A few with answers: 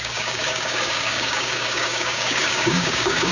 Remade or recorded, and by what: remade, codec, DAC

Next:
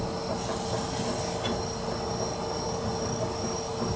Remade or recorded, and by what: recorded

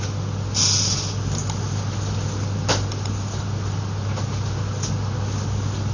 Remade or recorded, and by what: recorded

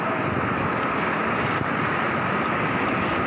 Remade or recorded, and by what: recorded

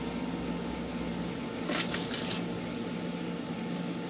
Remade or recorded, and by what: recorded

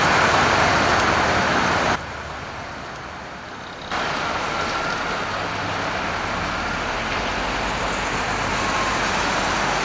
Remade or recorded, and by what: recorded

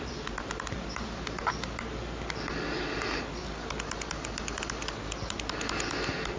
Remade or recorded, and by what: recorded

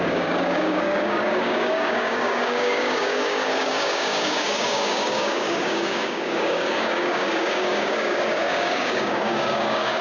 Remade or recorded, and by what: remade, codec, DAC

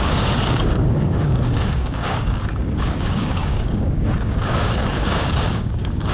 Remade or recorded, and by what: remade, codec, DAC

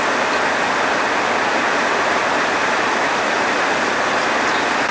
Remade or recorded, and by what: recorded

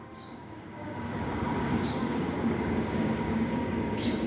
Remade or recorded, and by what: remade, codec, DAC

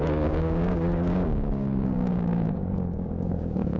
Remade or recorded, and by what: remade, codec, DAC